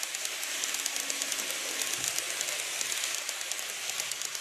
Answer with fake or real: real